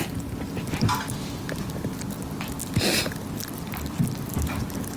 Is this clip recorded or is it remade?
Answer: recorded